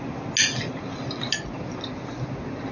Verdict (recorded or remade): recorded